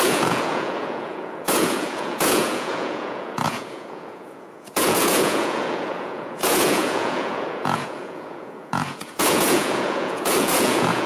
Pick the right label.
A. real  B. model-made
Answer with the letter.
B